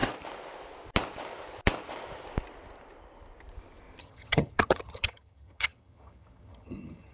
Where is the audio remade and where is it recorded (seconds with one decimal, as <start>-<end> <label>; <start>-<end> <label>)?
0.0-4.0 recorded; 4.0-7.1 remade